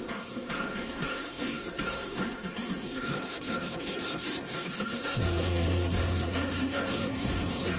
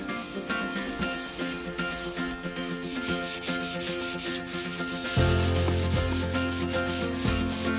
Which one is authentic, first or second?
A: second